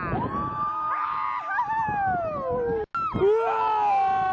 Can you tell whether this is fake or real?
real